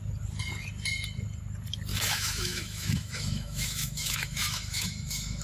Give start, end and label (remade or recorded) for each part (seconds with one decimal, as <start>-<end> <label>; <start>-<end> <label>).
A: 0.0-1.9 recorded; 1.9-5.4 remade